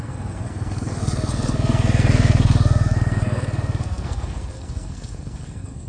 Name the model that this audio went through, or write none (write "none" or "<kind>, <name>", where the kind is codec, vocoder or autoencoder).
codec, SNAC